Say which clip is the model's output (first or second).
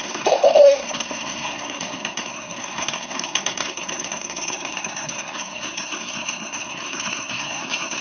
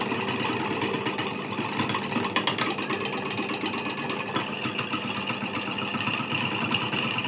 first